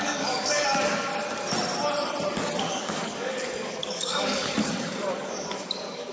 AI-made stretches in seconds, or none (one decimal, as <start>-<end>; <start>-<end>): 0.0-1.1; 2.6-6.1